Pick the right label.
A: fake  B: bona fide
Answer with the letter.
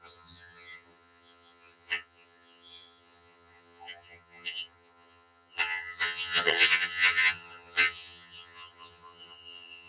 A